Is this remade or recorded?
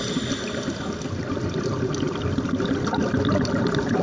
recorded